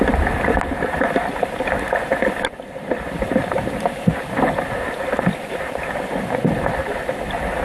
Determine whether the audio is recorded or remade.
recorded